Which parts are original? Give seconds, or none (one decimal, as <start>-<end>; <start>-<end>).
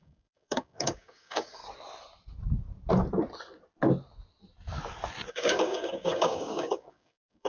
1.6-5.3